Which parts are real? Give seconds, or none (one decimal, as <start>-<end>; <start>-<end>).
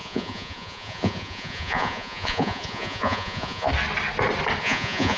3.7-4.6